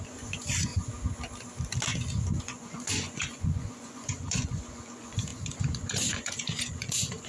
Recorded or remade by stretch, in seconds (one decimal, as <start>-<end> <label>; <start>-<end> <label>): 0.0-0.7 remade; 0.7-2.4 recorded; 2.4-7.3 remade